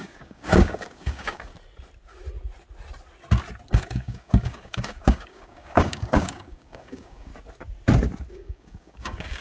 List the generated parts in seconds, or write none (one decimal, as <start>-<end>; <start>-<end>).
0.0-1.5; 3.7-7.3; 8.3-9.4